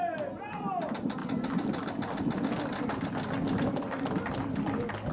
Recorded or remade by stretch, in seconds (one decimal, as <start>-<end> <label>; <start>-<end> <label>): 0.0-5.1 recorded